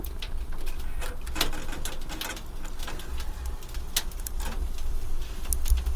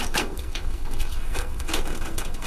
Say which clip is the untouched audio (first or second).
first